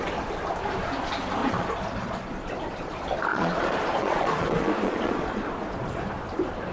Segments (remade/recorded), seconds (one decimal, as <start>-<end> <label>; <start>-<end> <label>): 0.0-1.4 recorded; 1.4-2.9 remade; 2.9-3.3 recorded; 3.3-6.0 remade; 6.0-6.7 recorded